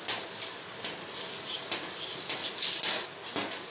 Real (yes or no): yes